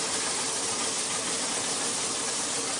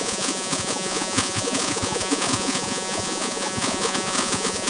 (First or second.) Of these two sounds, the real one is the first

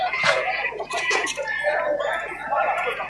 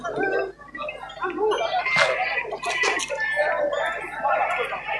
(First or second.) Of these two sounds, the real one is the second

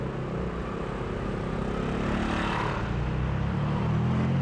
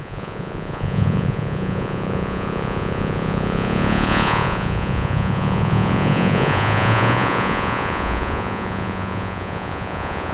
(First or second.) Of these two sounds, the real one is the first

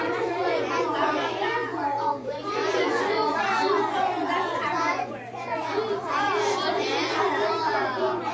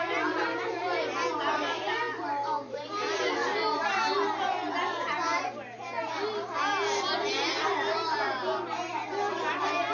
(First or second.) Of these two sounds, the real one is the second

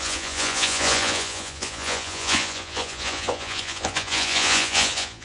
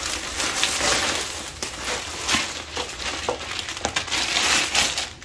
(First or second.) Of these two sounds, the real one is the second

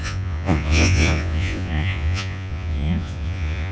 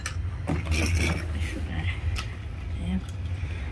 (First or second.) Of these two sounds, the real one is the second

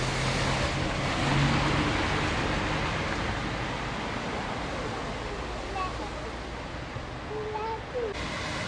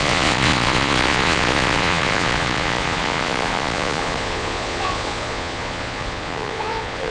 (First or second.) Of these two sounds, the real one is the first